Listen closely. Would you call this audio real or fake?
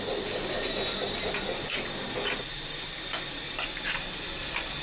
real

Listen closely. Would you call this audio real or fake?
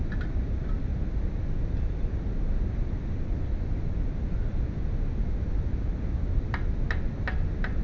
real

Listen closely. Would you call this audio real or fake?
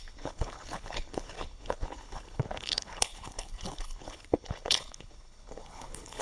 fake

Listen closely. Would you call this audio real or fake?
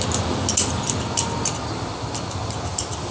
real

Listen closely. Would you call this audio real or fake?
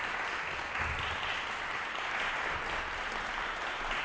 real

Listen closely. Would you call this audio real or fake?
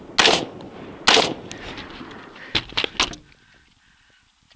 real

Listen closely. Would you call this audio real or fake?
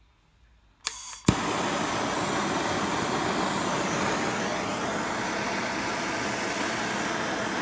real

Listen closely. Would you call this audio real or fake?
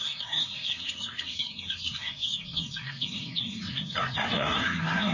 fake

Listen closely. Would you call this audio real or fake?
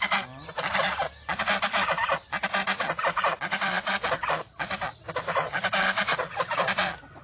real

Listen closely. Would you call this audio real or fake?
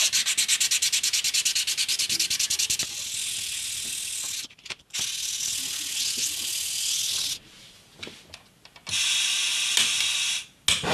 real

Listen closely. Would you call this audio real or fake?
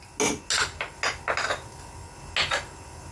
real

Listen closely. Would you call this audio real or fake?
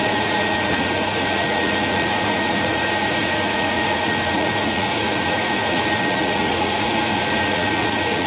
fake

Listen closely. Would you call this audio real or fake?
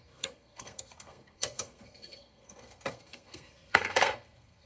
fake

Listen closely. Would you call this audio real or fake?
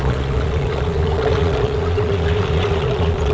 fake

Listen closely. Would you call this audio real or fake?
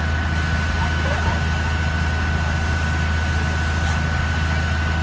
real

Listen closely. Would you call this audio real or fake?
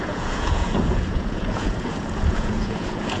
fake